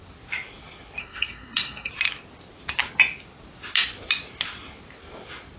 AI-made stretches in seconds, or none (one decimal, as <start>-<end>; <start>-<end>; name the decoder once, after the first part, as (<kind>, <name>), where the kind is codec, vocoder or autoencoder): 1.0-1.9 (codec, SNAC)